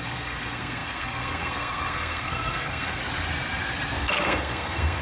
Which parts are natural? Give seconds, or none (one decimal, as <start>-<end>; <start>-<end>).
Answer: 3.0-4.0